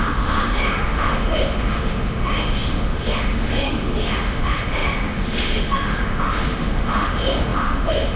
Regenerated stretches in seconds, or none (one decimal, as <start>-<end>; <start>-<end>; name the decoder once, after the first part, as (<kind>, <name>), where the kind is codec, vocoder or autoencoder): 0.0-8.2 (autoencoder, DAC-VAE)

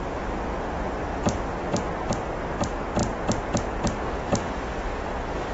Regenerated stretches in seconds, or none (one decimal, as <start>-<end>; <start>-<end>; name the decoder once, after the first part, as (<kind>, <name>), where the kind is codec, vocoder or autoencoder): none

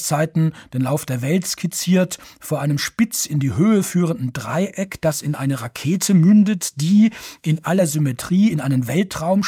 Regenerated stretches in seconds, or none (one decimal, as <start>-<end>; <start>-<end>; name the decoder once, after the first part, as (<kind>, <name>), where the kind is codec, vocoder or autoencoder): 4.5-7.8 (autoencoder, DAC-VAE)

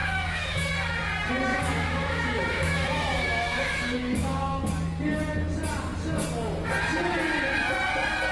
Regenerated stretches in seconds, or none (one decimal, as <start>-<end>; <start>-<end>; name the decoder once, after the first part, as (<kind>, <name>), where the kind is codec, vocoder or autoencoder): 0.0-0.7 (autoencoder, DAC-VAE); 1.5-4.7

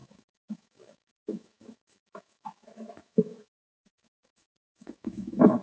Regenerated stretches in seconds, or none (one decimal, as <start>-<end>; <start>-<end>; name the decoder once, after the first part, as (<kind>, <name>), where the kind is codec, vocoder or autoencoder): 0.0-5.6 (autoencoder, DAC-VAE)